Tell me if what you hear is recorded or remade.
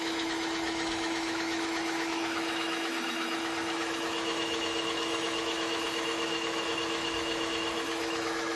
remade